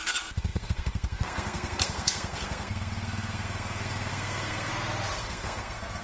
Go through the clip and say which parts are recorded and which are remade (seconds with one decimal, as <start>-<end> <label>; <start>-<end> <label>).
0.0-4.7 remade; 4.7-5.2 recorded; 5.2-6.0 remade